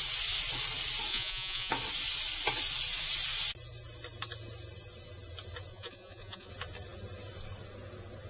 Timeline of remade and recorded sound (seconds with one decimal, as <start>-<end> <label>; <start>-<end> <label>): 0.0-1.1 recorded; 1.1-1.7 remade; 1.7-5.7 recorded; 5.7-6.5 remade; 6.5-8.3 recorded